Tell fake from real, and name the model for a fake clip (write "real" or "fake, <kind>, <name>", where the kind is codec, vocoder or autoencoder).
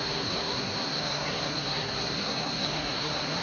fake, codec, SNAC